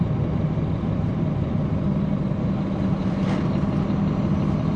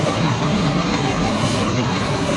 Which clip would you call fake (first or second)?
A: second